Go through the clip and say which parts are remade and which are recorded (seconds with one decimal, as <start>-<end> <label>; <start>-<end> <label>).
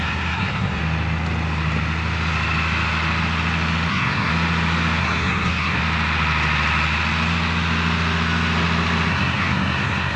0.0-0.8 remade; 0.8-3.9 recorded; 3.9-4.3 remade; 4.3-5.0 recorded; 5.0-5.8 remade; 5.8-9.1 recorded; 9.1-10.2 remade